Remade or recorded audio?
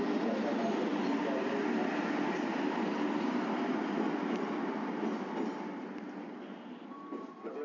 recorded